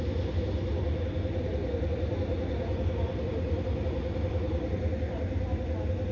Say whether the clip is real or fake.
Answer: real